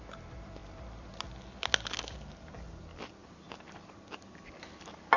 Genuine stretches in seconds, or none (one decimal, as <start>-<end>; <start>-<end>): 0.0-0.6; 1.3-5.2